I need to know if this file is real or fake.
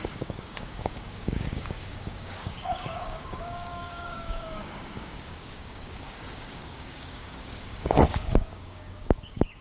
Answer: fake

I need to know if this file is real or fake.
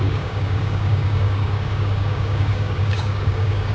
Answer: fake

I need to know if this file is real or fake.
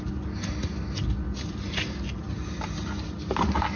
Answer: real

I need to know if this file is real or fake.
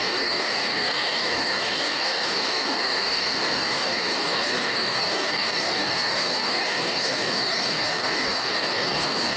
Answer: fake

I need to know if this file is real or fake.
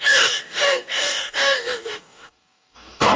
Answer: fake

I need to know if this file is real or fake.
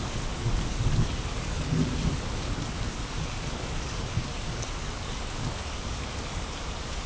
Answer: fake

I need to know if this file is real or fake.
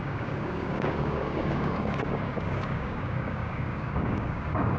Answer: fake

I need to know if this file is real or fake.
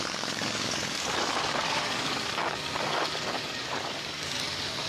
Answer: fake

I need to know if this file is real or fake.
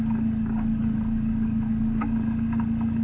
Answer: fake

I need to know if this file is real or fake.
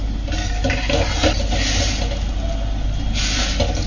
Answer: real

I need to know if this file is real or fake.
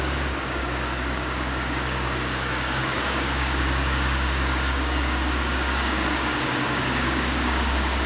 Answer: fake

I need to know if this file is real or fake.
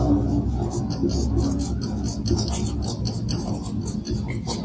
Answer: real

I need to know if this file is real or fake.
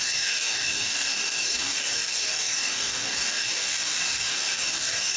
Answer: fake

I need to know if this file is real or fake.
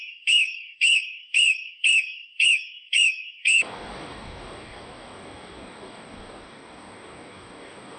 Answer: fake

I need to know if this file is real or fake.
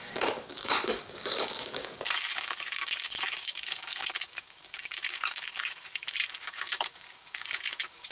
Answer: fake